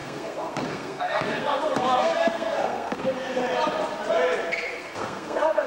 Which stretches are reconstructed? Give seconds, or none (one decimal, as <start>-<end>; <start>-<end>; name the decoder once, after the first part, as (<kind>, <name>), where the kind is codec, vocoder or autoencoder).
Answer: 0.0-3.4 (codec, SNAC); 4.7-5.7